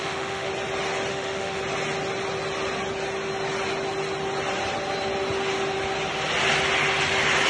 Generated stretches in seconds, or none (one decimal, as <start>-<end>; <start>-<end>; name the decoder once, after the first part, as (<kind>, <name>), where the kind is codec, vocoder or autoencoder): 0.0-0.5 (autoencoder, DAC-VAE); 1.1-1.6